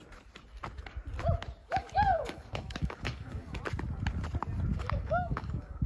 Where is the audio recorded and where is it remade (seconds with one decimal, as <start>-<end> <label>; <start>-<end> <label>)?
0.0-1.6 recorded; 1.6-3.6 remade; 3.6-4.7 recorded; 4.7-5.9 remade